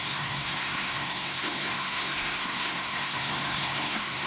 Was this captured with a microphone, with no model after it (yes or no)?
no